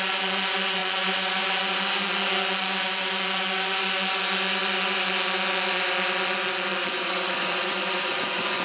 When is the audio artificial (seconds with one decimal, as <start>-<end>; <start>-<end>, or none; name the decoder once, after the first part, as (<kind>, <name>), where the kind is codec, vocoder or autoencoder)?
0.8-1.4 (vocoder, Vocos); 6.9-8.6